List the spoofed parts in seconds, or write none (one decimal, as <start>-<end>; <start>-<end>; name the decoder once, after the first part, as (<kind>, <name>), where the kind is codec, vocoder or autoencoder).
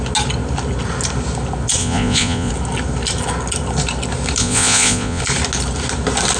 1.8-2.5 (vocoder, Vocos); 4.4-5.2